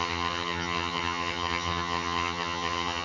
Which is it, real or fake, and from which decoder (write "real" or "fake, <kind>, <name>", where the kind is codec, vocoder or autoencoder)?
fake, vocoder, HiFi-GAN